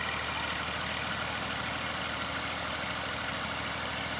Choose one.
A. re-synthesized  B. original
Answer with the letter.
B